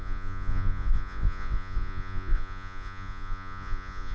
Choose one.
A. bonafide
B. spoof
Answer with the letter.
B